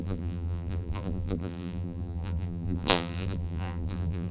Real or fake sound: fake